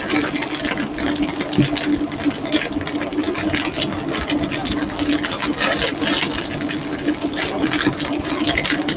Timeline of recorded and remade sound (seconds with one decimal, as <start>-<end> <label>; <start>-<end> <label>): 0.0-9.0 recorded